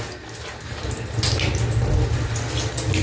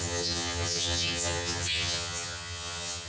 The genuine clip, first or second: first